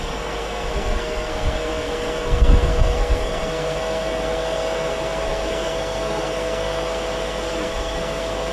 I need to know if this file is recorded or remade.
remade